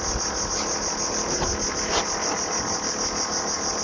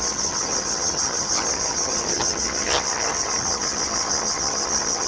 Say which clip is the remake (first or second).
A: second